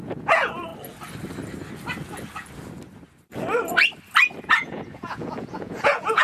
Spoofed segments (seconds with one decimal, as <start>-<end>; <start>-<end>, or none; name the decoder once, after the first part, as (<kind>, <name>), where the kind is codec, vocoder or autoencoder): 0.0-0.7 (vocoder, Vocos); 4.4-6.2